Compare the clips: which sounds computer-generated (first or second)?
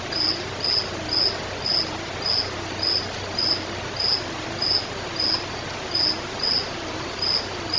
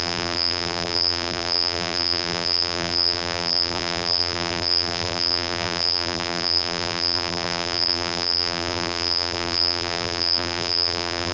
second